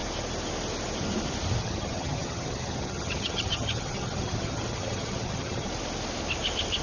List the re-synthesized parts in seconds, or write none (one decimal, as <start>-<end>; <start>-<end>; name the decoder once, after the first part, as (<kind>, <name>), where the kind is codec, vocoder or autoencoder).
1.6-5.7 (vocoder, HiFi-GAN)